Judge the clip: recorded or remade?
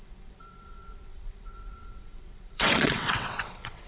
remade